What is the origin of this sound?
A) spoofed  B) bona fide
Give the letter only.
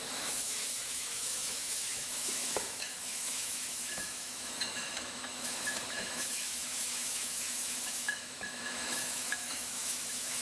A